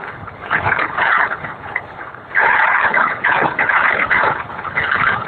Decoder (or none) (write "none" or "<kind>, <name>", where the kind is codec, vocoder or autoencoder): codec, HILCodec